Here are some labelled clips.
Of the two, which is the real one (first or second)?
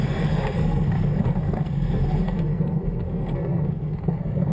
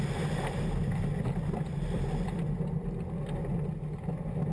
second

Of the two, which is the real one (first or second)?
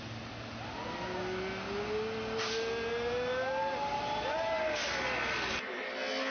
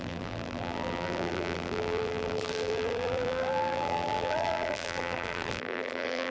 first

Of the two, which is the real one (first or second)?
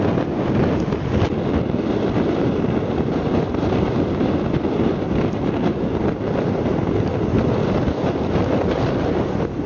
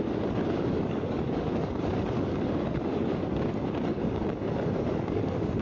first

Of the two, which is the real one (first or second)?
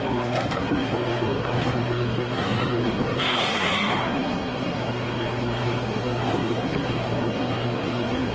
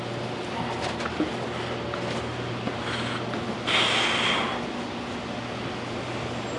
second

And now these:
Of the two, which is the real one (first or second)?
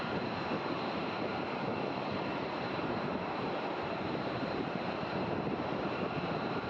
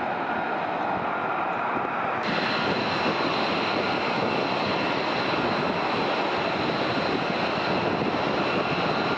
second